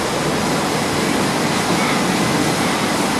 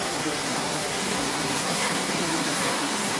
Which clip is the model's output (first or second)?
second